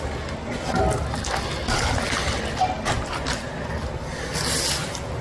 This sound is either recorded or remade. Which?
recorded